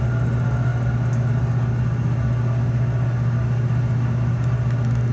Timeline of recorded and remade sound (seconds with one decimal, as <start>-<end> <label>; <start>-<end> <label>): 0.0-5.1 recorded